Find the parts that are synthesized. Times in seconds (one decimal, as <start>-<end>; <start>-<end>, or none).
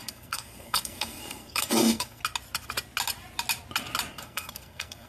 0.0-2.2; 4.1-5.1